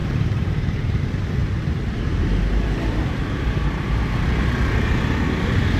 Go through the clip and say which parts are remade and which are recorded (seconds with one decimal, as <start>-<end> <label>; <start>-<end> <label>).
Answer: 0.0-1.0 remade; 1.0-1.4 recorded; 1.4-4.0 remade; 4.0-5.8 recorded